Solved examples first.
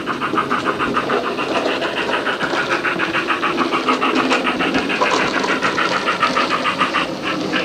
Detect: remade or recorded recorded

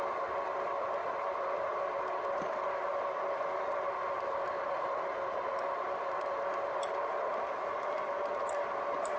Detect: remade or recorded recorded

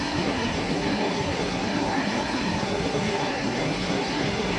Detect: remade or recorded remade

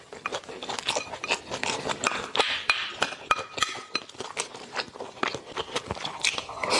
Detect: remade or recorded recorded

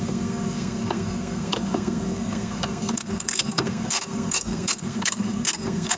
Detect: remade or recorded remade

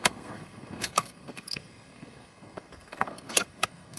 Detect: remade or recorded remade